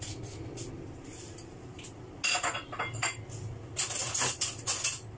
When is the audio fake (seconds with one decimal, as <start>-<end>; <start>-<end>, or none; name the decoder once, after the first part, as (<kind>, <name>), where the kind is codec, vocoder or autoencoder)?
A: 1.1-1.7 (vocoder, BigVGAN v2); 4.0-4.6